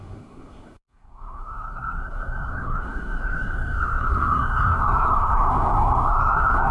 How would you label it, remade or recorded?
remade